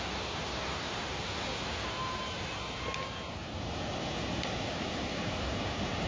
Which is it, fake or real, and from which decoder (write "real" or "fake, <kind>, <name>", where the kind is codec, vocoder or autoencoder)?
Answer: real